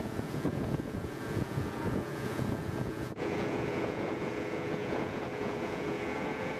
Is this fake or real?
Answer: fake